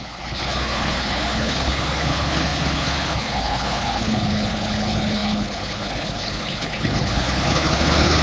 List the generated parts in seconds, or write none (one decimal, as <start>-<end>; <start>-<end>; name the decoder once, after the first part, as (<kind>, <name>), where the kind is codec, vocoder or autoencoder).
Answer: 0.0-8.2 (codec, HILCodec)